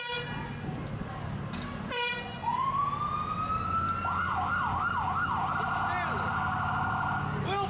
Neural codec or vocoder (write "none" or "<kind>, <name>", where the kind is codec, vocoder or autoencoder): none